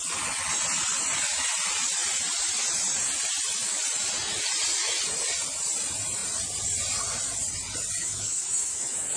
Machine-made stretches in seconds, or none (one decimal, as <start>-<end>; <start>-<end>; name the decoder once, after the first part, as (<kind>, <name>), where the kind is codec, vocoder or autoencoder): 8.0-9.2 (autoencoder, DAC-VAE)